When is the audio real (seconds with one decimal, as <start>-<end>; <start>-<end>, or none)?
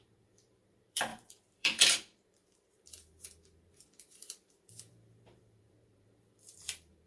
none